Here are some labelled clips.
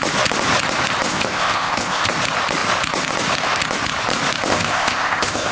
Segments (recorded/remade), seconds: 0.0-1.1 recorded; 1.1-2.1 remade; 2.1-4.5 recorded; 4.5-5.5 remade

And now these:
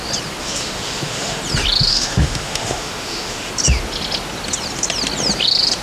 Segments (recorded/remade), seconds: 0.0-0.4 recorded; 0.4-1.4 remade; 1.4-1.9 recorded; 1.9-3.5 remade; 3.5-5.8 recorded

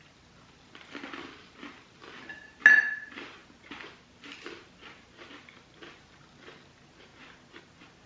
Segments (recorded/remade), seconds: 0.0-8.1 recorded

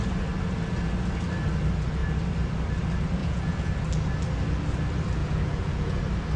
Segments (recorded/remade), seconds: 0.0-3.2 recorded; 3.2-3.7 remade; 3.7-5.2 recorded; 5.2-6.0 remade; 6.0-6.4 recorded

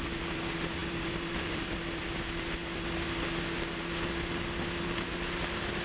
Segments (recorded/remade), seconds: 0.0-0.8 recorded; 0.8-2.1 remade; 2.1-5.8 recorded

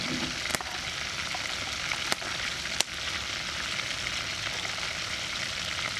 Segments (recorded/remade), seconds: 0.0-6.0 recorded